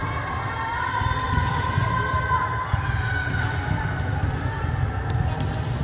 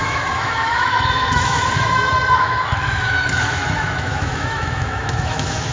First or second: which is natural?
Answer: first